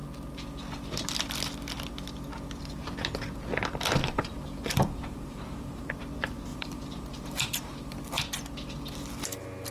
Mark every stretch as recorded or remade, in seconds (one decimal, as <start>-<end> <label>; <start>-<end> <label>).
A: 0.0-4.0 recorded; 4.0-5.9 remade; 5.9-6.5 recorded; 6.5-8.1 remade; 8.1-9.7 recorded